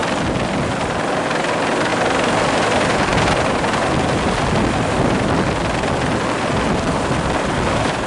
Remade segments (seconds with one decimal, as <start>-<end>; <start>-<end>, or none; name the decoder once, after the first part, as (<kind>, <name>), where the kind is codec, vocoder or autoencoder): none